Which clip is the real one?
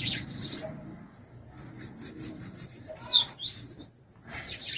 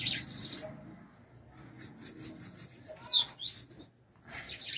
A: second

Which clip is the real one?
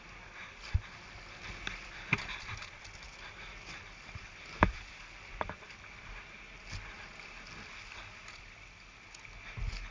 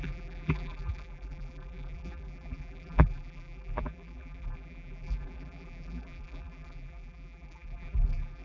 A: first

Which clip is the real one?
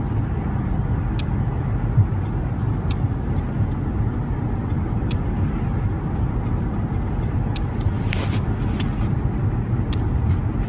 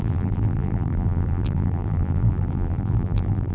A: first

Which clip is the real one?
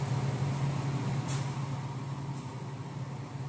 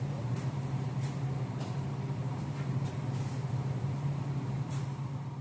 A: first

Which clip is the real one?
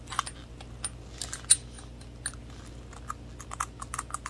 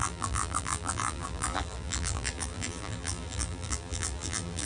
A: first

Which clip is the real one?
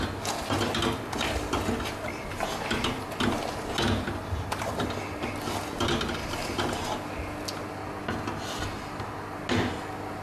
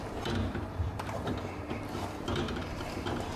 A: first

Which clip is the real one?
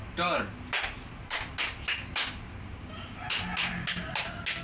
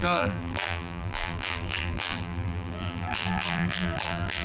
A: first